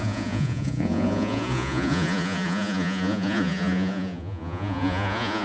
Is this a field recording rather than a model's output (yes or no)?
no